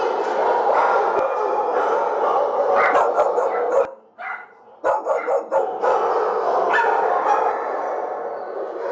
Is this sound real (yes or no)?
yes